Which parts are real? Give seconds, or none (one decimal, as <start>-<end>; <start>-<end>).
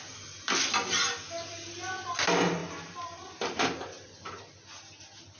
0.0-2.6; 4.4-5.4